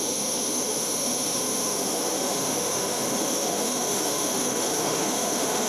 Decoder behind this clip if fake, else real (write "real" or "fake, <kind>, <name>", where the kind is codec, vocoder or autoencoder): fake, autoencoder, DAC-VAE